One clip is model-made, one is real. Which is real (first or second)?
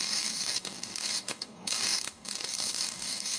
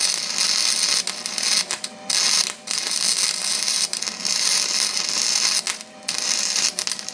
second